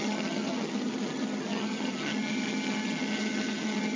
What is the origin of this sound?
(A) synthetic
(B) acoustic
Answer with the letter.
A